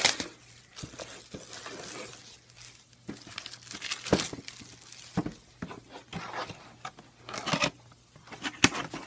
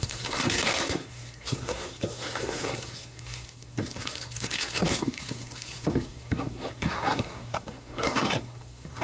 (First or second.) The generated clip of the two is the second